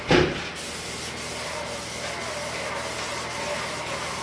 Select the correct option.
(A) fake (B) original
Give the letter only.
B